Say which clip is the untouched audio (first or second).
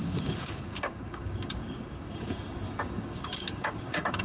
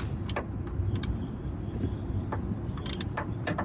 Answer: second